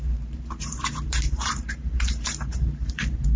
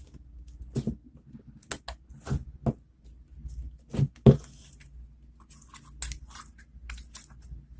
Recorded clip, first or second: second